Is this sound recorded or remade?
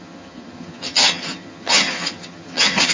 remade